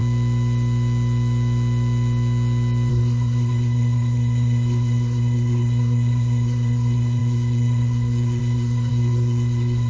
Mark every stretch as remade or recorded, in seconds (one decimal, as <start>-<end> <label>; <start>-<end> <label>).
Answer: 0.0-2.9 recorded; 2.9-9.9 remade